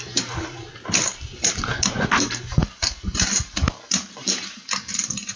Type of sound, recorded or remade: remade